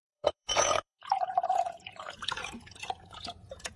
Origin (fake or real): fake